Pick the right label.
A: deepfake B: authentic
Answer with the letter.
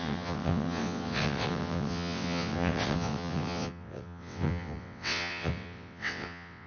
A